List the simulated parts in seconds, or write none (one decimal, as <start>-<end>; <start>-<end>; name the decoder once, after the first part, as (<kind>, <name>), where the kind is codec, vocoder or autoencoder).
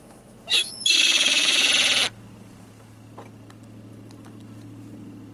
0.0-1.7 (autoencoder, DAC-VAE)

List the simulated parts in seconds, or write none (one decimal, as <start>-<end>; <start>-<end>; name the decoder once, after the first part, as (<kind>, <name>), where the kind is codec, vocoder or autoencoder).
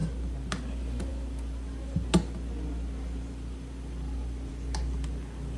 none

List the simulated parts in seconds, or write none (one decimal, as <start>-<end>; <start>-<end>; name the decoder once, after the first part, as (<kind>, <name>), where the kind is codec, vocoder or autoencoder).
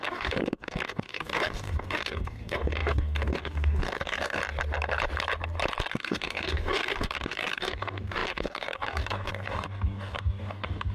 0.0-4.4 (codec, DAC); 5.9-10.9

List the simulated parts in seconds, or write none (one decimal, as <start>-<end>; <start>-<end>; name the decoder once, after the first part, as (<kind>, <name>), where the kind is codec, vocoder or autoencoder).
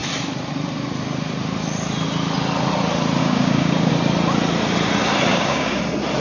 3.2-3.9 (codec, DAC); 5.3-5.8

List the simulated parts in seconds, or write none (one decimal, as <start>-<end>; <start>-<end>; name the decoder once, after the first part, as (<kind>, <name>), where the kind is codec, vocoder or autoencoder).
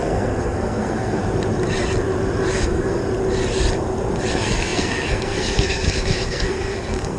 0.0-1.2 (codec, SNAC); 2.5-3.0; 4.3-7.2